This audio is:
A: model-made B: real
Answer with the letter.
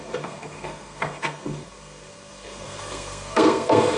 A